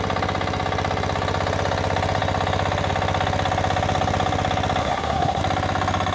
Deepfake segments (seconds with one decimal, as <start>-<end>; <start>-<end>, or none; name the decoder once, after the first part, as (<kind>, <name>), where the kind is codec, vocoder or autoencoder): 4.8-5.4 (codec, SNAC)